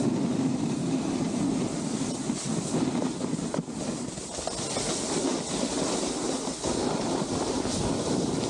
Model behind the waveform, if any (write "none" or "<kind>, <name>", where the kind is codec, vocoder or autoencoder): none